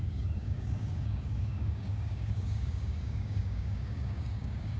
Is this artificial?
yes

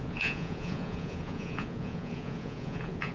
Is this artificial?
yes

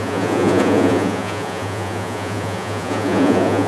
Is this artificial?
yes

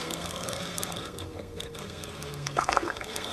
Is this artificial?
yes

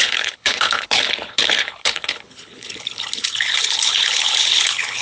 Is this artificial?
yes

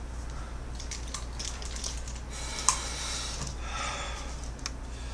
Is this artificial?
no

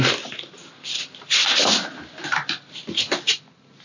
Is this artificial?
no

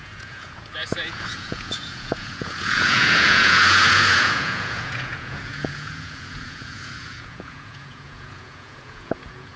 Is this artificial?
yes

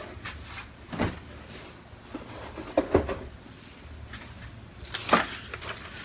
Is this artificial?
no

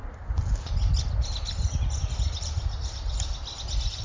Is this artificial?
no